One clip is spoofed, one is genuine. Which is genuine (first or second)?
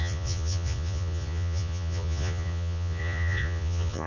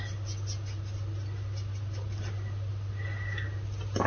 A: second